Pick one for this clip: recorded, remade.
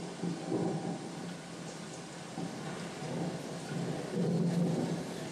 recorded